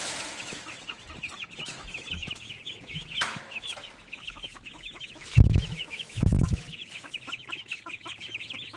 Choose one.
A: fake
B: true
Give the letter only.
A